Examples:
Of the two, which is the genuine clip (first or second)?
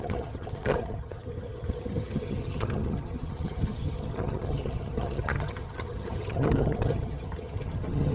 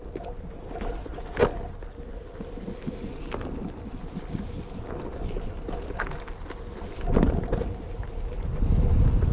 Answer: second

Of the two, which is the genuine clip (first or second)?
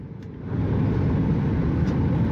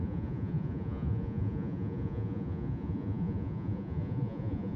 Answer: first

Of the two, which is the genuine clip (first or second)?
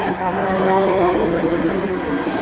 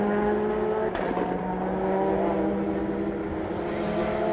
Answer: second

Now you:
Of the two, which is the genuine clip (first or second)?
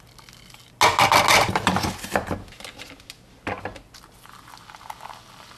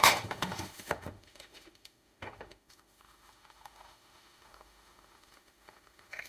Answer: first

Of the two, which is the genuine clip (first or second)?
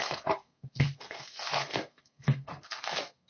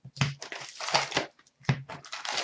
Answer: second